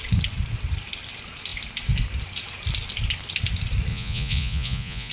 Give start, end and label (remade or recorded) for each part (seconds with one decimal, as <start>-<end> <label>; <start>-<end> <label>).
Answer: 0.0-3.9 recorded; 3.9-5.1 remade